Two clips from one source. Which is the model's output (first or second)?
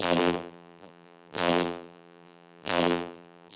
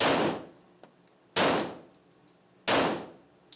first